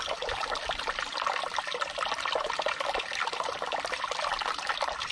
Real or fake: real